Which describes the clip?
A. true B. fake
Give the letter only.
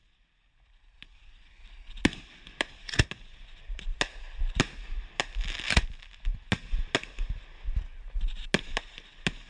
A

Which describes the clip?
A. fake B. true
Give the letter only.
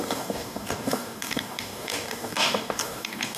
A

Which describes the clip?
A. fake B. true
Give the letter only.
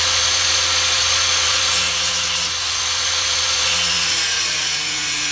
A